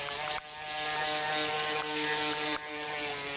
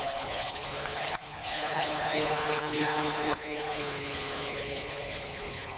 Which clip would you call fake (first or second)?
second